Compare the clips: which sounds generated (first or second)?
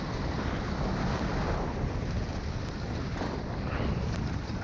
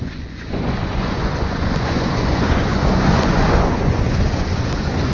second